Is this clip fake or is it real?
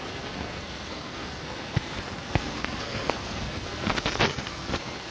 fake